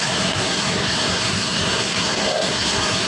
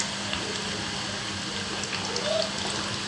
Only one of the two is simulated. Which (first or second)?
first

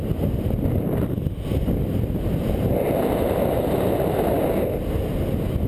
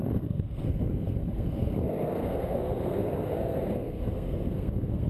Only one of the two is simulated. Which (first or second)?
second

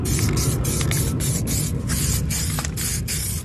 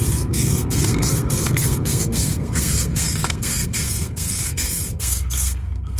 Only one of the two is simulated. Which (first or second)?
second